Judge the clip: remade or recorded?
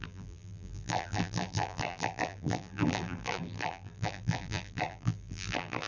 remade